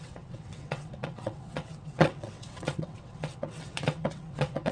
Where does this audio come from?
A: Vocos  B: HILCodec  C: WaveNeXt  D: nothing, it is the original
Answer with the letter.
C